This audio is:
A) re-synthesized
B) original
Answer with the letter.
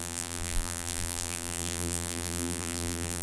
A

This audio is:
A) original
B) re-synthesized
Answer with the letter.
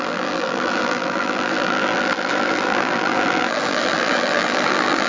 B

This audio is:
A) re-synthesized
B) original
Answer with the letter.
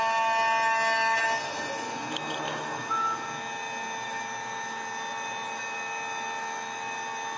B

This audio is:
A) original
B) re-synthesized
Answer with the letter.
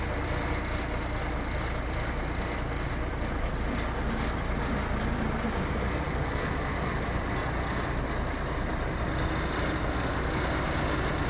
A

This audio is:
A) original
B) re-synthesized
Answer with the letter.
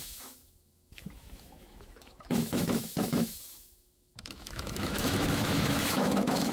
B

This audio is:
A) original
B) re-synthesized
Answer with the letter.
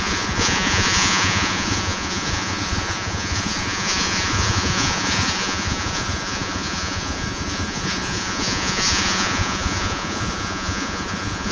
B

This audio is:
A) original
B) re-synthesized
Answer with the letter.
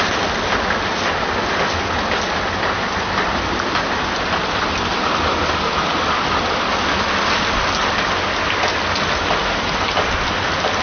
A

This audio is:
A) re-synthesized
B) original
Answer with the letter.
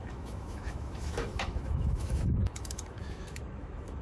A